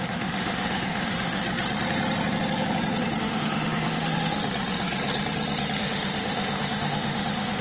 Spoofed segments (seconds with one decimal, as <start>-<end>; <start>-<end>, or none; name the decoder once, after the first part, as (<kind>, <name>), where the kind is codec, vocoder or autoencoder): 0.0-1.4 (autoencoder, DAC-VAE); 3.2-4.4; 5.8-7.6